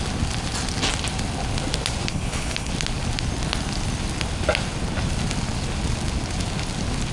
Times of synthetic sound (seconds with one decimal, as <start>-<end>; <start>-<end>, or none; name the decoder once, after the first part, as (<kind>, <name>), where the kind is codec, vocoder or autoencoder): 2.1-2.7 (codec, HILCodec)